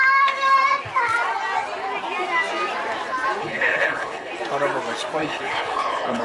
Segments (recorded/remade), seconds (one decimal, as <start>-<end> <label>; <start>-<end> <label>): 0.0-3.4 recorded; 3.4-4.3 remade; 4.3-5.2 recorded; 5.2-6.2 remade